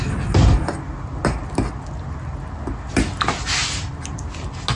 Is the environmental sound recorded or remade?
recorded